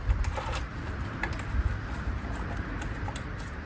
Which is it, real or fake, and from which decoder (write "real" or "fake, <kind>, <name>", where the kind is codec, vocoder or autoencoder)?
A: fake, vocoder, BigVGAN v2